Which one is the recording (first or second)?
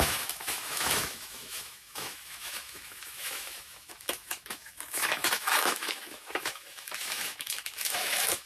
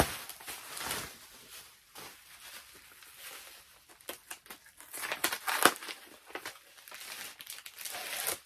second